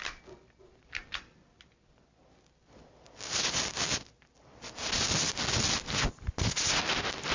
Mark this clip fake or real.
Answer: real